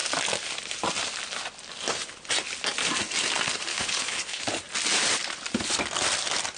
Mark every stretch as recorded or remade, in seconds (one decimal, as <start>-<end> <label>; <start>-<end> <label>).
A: 0.0-3.7 recorded; 3.7-4.4 remade; 4.4-6.6 recorded